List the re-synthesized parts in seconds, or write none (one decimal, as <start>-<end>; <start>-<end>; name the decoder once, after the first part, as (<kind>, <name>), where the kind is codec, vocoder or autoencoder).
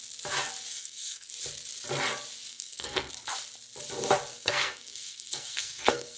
0.7-1.3 (codec, SNAC); 2.5-3.1; 4.3-6.2